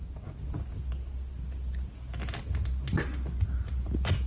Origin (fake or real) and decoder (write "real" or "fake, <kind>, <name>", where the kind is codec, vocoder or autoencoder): real